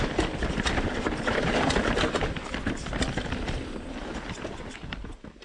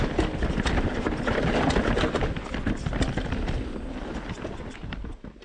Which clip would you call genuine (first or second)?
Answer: second